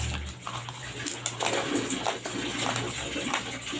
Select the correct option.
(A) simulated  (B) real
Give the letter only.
B